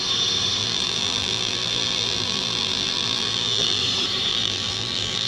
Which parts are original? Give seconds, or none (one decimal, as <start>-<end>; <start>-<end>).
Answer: 0.0-0.6; 3.8-4.3